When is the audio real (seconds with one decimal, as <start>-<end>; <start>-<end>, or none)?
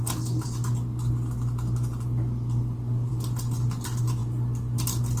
0.0-5.2